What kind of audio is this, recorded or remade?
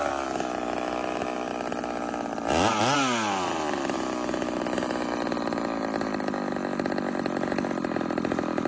recorded